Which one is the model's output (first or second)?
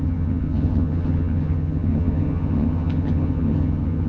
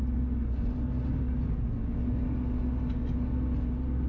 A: first